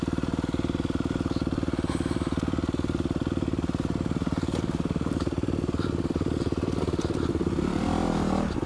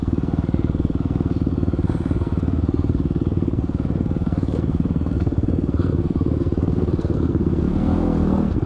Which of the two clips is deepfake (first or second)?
second